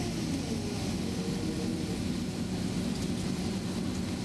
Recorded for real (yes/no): yes